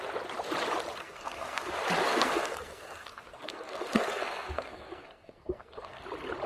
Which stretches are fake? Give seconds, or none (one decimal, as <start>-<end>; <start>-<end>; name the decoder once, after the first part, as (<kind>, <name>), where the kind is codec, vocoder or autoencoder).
1.0-1.7 (codec, SNAC); 2.1-6.0